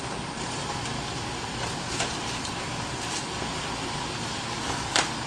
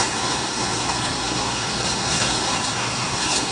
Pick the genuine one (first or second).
first